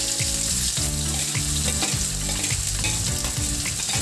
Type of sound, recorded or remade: recorded